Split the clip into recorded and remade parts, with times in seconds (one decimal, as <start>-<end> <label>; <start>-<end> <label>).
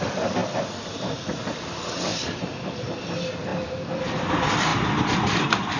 0.0-0.4 recorded; 0.4-1.1 remade; 1.1-2.1 recorded; 2.1-2.9 remade; 2.9-3.5 recorded; 3.5-4.3 remade; 4.3-4.7 recorded; 4.7-5.8 remade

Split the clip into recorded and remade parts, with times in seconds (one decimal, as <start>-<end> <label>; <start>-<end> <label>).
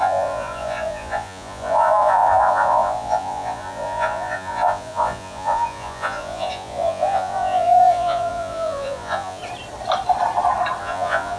0.0-9.4 remade; 9.4-10.8 recorded; 10.8-11.4 remade